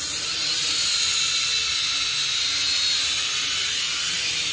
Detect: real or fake real